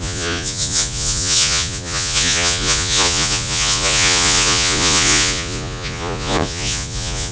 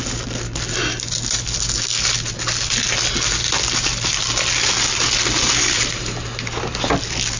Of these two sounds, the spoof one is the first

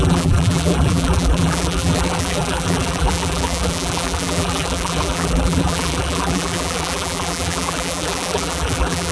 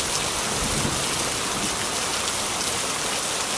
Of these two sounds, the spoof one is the first